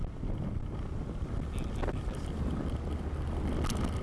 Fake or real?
real